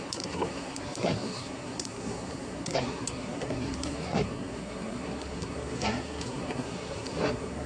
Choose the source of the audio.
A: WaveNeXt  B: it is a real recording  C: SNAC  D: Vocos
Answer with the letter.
C